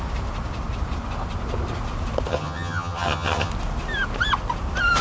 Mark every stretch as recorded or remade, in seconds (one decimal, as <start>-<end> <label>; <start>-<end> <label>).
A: 0.0-2.3 recorded; 2.3-3.5 remade; 3.5-5.0 recorded